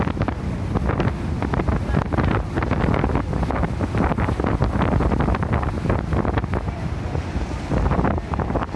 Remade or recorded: recorded